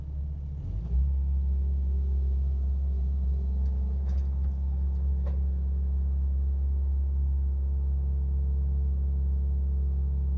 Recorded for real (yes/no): yes